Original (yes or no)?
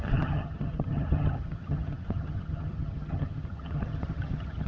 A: no